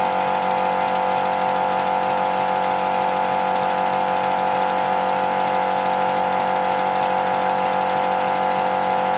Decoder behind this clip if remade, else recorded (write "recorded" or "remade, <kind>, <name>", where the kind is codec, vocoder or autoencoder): recorded